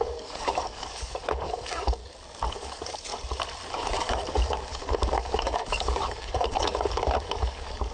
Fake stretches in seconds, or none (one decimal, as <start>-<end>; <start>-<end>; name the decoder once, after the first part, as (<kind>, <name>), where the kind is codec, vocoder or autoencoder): 0.0-2.0 (codec, DAC); 2.5-3.1; 3.7-7.9

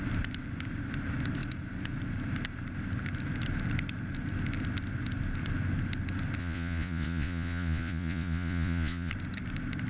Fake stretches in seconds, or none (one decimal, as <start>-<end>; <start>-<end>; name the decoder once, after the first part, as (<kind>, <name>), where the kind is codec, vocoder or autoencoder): 6.4-9.1 (vocoder, Vocos)

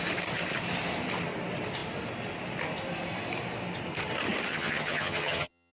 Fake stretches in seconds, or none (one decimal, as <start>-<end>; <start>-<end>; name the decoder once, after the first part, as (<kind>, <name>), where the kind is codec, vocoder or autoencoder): 4.5-5.7 (vocoder, HiFi-GAN)

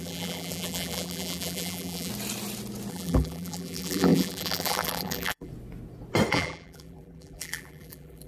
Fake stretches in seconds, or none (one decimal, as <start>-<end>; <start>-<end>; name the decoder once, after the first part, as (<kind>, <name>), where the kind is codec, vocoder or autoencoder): 0.0-2.1 (vocoder, BigVGAN v2); 2.9-5.5; 6.3-8.3

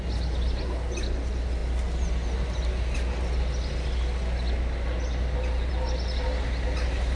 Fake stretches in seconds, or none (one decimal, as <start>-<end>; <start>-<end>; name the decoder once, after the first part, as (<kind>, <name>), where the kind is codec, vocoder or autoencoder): none

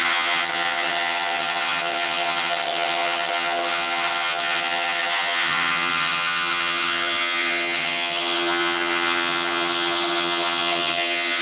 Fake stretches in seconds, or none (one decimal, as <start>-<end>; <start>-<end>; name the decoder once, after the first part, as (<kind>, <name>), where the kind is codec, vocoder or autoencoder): 0.0-11.4 (vocoder, HiFi-GAN)

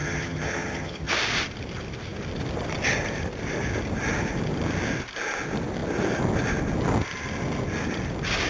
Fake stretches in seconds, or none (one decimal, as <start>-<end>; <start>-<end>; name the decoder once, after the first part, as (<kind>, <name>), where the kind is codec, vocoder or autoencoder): 0.0-1.1 (vocoder, HiFi-GAN)